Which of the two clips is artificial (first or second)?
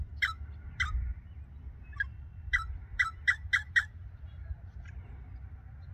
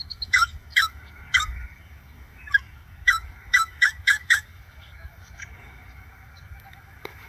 second